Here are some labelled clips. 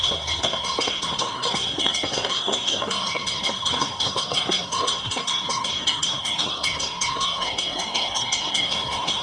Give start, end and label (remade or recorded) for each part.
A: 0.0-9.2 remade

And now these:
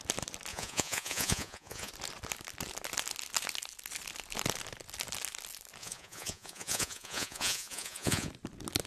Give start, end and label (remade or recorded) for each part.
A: 0.0-0.5 recorded; 0.5-1.9 remade; 1.9-5.8 recorded; 5.8-8.3 remade; 8.3-8.9 recorded

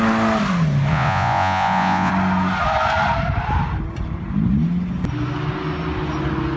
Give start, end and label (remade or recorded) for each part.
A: 0.0-0.9 recorded; 0.9-2.1 remade; 2.1-6.6 recorded

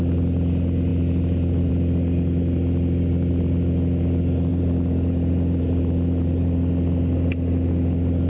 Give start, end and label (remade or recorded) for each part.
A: 0.0-0.9 recorded; 0.9-1.7 remade; 1.7-4.5 recorded; 4.5-5.8 remade; 5.8-8.3 recorded

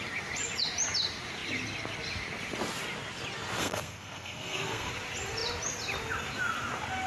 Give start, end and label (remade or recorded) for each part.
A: 0.0-3.6 recorded; 3.6-4.9 remade; 4.9-7.1 recorded

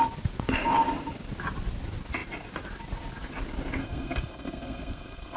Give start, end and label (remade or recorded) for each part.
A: 0.0-3.8 recorded; 3.8-5.4 remade

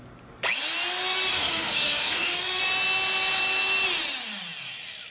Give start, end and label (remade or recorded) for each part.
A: 0.0-1.3 recorded; 1.3-2.6 remade; 2.6-5.1 recorded